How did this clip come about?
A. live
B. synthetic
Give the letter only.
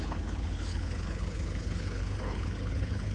B